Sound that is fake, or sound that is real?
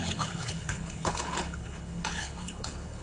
fake